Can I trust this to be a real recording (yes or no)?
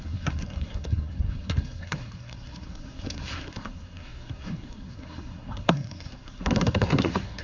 no